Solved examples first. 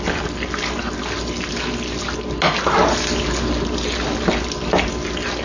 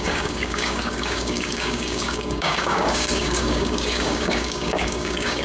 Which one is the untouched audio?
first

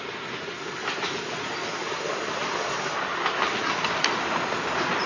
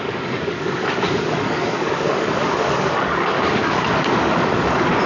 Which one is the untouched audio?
first